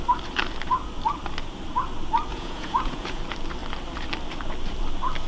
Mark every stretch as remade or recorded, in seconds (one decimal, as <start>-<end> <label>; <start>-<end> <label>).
0.0-2.3 recorded; 2.3-3.2 remade; 3.2-5.3 recorded